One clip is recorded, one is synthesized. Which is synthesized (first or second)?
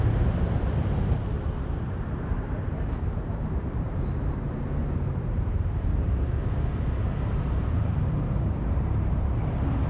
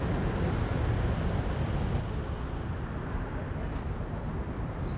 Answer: first